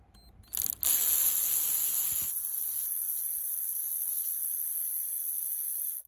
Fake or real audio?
real